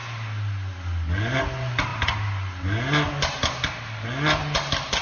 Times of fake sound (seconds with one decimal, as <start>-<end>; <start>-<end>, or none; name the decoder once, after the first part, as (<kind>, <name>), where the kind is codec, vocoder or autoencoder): none